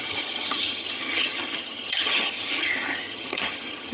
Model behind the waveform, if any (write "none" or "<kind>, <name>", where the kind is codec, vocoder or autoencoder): vocoder, HiFi-GAN